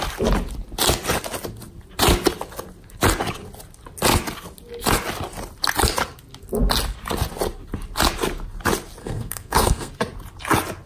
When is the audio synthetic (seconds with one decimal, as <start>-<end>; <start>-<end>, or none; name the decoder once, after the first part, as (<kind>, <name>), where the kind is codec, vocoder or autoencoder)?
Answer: 9.0-9.9 (codec, SNAC)